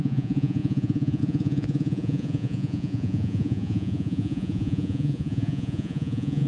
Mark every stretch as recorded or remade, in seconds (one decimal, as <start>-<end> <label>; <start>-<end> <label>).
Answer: 0.0-6.5 remade